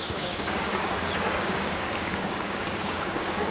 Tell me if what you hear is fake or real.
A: fake